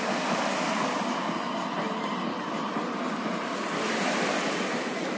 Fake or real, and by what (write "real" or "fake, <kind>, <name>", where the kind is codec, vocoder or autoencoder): real